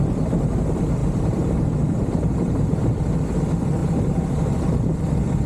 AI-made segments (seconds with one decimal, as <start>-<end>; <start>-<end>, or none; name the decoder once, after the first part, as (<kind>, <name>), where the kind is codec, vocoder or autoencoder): 1.0-3.1 (vocoder, BigVGAN v2); 3.8-4.6